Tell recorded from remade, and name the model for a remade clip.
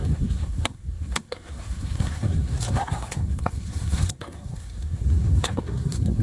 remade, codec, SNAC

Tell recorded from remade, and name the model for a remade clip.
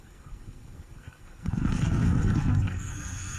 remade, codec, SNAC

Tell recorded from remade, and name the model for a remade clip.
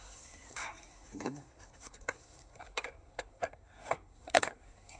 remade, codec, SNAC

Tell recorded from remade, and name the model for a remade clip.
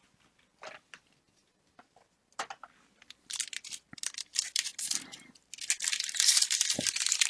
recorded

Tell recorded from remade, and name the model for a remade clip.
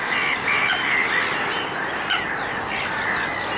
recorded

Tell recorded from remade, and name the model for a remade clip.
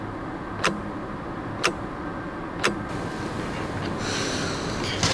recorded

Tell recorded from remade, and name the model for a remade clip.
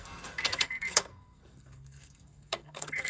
remade, codec, SNAC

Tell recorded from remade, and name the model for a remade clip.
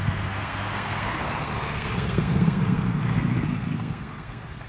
remade, codec, SNAC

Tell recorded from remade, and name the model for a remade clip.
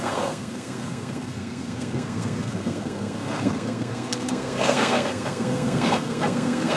remade, codec, SNAC